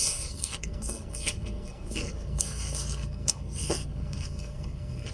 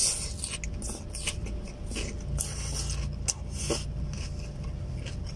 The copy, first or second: first